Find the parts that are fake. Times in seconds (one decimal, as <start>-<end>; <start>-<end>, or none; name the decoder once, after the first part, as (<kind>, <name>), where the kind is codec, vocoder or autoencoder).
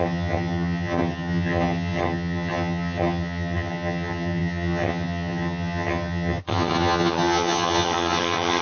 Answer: 0.0-8.6 (vocoder, HiFi-GAN)